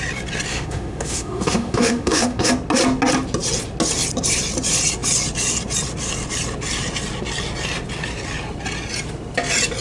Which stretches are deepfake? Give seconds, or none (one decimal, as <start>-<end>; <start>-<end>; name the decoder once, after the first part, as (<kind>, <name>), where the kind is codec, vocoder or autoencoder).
0.5-2.5 (autoencoder, DAC-VAE)